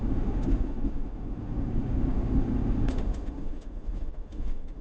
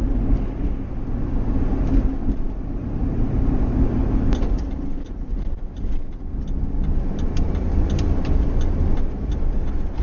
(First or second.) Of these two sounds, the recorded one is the second